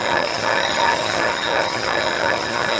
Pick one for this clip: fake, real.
fake